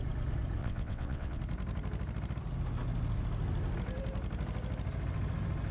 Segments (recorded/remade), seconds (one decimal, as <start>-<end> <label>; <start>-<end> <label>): 0.0-0.6 recorded; 0.6-1.4 remade; 1.4-5.7 recorded